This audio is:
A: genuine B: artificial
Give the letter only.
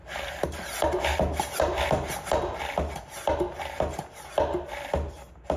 A